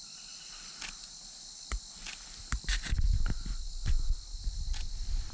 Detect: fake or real real